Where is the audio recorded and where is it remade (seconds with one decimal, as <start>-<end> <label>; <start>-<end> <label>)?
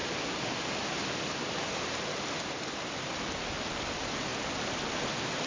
0.0-5.5 recorded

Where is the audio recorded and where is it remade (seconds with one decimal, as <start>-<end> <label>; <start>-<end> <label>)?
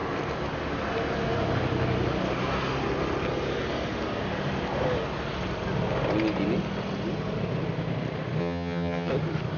0.0-8.4 recorded; 8.4-9.1 remade; 9.1-9.6 recorded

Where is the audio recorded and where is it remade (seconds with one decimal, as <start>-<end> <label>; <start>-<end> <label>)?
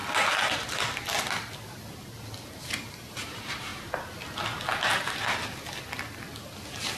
0.0-2.7 recorded; 2.7-3.7 remade; 3.7-7.0 recorded